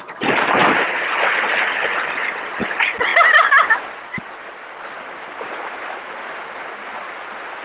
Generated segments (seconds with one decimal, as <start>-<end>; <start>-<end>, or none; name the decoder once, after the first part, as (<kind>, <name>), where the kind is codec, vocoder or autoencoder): none